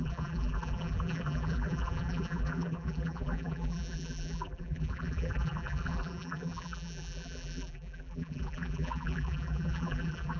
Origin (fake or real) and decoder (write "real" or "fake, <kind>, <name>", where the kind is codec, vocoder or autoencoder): fake, vocoder, BigVGAN v2